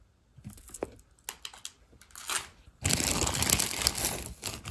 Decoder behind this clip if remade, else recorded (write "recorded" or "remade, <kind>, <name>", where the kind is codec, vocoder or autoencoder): recorded